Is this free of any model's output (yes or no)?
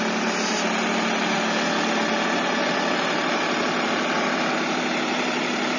yes